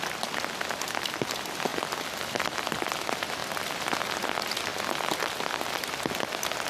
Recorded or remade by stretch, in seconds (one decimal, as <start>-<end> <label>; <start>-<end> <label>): 0.0-1.7 recorded; 1.7-2.8 remade; 2.8-3.4 recorded; 3.4-4.1 remade; 4.1-4.7 recorded; 4.7-5.4 remade; 5.4-6.7 recorded